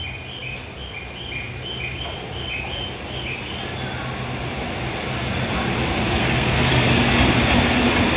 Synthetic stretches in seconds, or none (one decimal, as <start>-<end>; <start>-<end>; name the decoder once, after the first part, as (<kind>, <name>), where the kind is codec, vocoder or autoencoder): 6.2-6.7 (codec, SNAC)